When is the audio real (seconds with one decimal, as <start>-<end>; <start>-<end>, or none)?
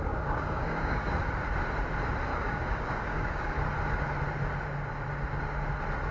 1.1-2.3; 3.6-6.1